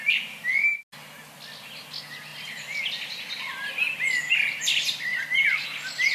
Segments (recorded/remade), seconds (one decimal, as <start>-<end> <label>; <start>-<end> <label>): 0.0-6.1 recorded